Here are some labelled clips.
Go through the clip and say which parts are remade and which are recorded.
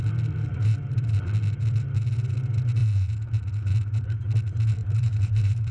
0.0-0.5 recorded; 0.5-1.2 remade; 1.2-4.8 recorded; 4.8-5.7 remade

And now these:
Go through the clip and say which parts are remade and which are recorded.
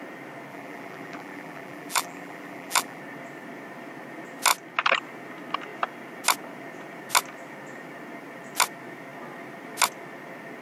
0.0-0.5 recorded; 0.5-3.0 remade; 3.0-10.6 recorded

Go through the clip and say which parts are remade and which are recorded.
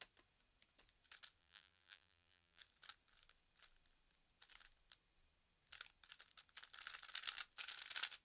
0.0-1.4 recorded; 1.4-2.6 remade; 2.6-8.2 recorded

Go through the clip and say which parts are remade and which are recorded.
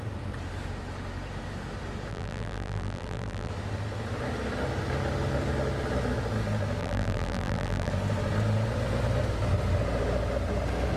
0.0-2.1 recorded; 2.1-3.5 remade; 3.5-6.8 recorded; 6.8-7.9 remade; 7.9-11.0 recorded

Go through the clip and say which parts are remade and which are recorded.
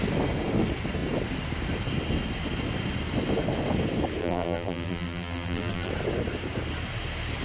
0.0-4.2 recorded; 4.2-5.9 remade; 5.9-7.4 recorded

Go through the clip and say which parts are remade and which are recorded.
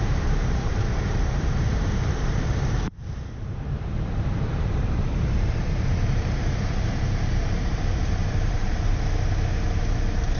0.0-8.9 remade; 8.9-9.8 recorded; 9.8-10.4 remade